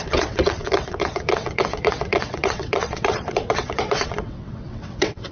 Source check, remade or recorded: remade